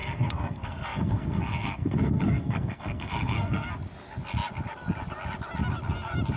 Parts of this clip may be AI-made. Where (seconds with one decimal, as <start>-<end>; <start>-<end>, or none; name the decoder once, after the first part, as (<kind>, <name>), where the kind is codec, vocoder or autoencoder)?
0.0-3.7 (codec, SNAC)